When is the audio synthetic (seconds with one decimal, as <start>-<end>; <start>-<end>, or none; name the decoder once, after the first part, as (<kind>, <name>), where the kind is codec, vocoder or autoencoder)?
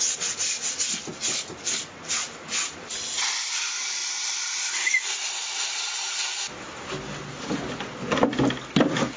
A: none